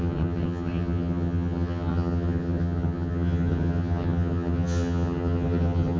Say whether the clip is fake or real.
fake